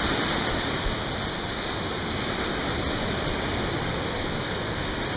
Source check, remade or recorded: recorded